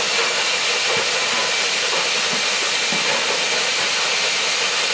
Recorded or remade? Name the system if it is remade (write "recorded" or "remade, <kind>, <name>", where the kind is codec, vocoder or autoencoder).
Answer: recorded